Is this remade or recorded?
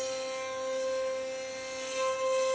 recorded